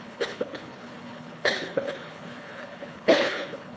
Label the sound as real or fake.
fake